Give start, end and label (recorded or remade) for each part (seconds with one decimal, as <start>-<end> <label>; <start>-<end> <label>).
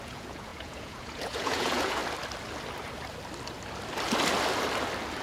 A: 0.0-2.0 remade; 2.0-5.2 recorded